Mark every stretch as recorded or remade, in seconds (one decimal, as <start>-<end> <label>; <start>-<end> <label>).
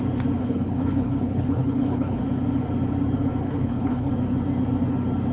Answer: 0.0-0.4 recorded; 0.4-2.2 remade; 2.2-3.4 recorded; 3.4-4.1 remade; 4.1-5.3 recorded